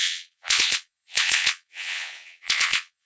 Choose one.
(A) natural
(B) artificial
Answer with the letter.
B